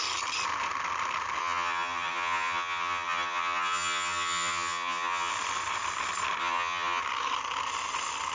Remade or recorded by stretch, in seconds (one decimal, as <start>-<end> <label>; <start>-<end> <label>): 0.0-1.4 recorded; 1.4-5.3 remade; 5.3-6.4 recorded; 6.4-7.0 remade; 7.0-8.3 recorded